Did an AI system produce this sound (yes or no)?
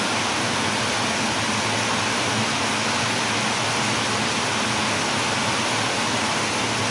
no